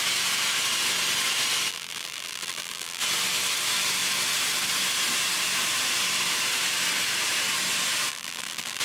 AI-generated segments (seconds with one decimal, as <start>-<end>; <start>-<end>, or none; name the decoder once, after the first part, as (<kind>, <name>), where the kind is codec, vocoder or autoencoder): 1.7-3.0 (vocoder, BigVGAN v2); 8.1-8.8